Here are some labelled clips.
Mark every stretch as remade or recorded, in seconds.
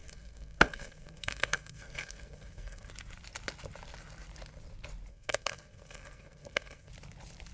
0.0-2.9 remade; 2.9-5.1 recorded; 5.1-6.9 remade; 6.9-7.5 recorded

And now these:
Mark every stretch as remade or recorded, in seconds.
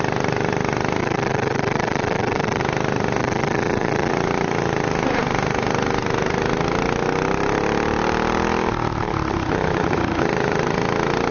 0.0-1.0 recorded; 1.0-2.6 remade; 2.6-3.2 recorded; 3.2-4.1 remade; 4.1-11.3 recorded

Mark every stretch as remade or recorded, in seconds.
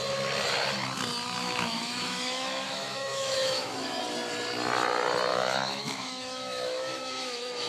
0.0-1.4 recorded; 1.4-4.0 remade; 4.0-5.3 recorded; 5.3-7.7 remade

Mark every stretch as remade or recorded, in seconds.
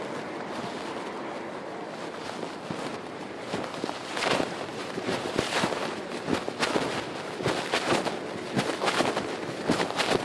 0.0-2.9 recorded; 2.9-6.1 remade; 6.1-10.2 recorded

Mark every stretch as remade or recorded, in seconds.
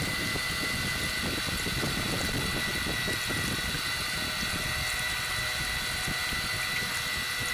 0.0-7.5 recorded